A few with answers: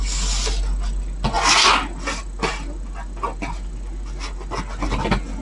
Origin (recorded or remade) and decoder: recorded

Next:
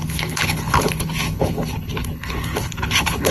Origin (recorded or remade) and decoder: remade, codec, HILCodec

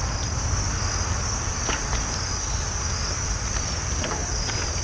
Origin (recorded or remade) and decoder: recorded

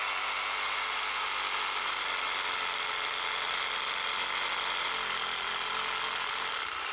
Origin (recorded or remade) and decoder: recorded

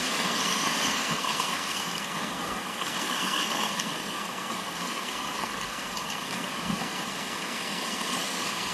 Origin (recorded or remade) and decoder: remade, codec, SNAC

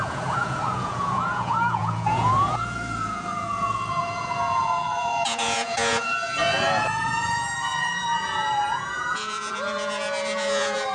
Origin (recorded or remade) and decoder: remade, vocoder, Vocos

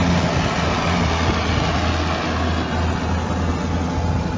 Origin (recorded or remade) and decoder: recorded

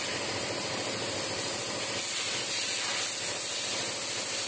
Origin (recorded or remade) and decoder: recorded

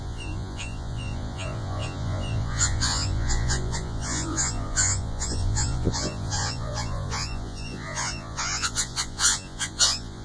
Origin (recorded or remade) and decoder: remade, vocoder, Vocos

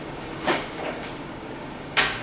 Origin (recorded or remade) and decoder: remade, codec, DAC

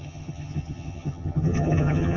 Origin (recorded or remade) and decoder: remade, vocoder, HiFi-GAN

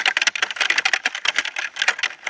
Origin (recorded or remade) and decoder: recorded